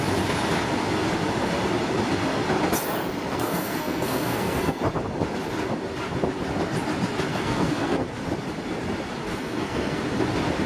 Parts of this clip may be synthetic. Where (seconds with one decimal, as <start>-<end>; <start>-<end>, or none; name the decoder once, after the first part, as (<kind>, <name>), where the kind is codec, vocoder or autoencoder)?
3.3-4.8 (codec, SNAC); 7.3-8.1; 9.3-10.0